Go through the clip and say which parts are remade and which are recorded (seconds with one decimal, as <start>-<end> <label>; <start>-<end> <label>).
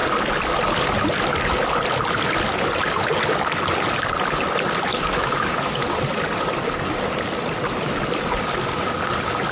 0.0-4.9 recorded; 4.9-5.8 remade; 5.8-9.5 recorded